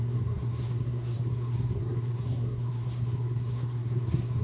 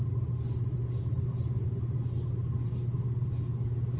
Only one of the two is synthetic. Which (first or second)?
first